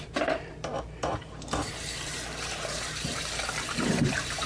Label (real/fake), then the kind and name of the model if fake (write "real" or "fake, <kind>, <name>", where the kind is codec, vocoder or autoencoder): fake, vocoder, BigVGAN v2